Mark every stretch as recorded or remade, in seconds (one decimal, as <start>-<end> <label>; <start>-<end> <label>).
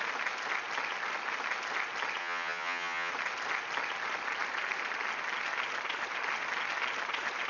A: 0.0-2.2 recorded; 2.2-3.1 remade; 3.1-7.5 recorded